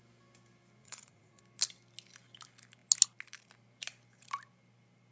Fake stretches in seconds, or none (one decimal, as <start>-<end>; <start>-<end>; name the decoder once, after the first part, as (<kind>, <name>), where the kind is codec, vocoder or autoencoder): 0.8-1.4 (vocoder, Vocos)